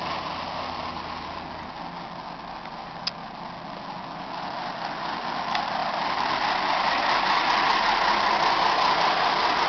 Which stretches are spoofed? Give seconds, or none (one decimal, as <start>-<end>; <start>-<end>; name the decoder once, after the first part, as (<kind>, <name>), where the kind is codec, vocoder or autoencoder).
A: none